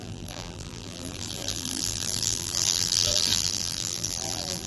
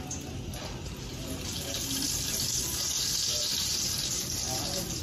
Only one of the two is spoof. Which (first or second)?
first